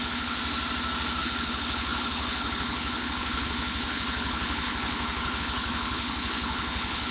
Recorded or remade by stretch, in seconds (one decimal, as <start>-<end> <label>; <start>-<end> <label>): 0.0-0.4 remade; 0.4-1.2 recorded; 1.2-7.1 remade